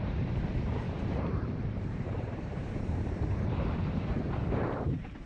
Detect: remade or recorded remade